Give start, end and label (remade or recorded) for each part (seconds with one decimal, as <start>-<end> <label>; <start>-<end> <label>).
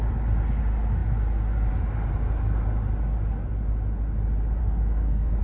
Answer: 0.0-4.6 recorded; 4.6-5.4 remade